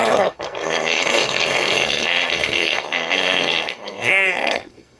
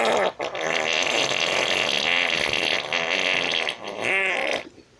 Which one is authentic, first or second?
second